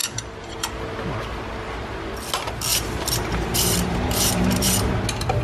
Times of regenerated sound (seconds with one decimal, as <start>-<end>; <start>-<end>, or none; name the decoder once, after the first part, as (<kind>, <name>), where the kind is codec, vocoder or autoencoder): 0.0-0.7 (vocoder, BigVGAN v2); 2.7-4.9